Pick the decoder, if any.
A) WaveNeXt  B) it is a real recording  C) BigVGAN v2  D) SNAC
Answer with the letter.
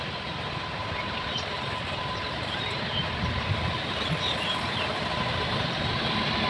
C